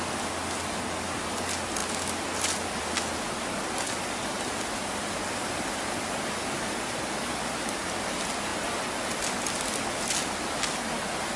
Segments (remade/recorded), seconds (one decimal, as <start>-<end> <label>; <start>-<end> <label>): 0.0-11.4 recorded